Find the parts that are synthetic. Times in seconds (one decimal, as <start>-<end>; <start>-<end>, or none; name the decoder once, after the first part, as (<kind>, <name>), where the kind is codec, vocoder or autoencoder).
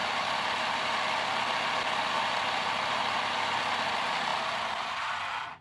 0.0-4.3 (vocoder, BigVGAN v2); 4.9-5.6